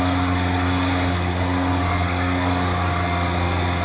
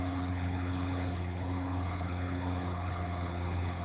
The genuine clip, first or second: first